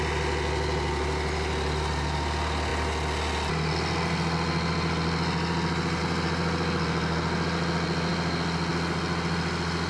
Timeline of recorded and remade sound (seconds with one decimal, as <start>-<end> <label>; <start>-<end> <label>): 0.0-9.9 recorded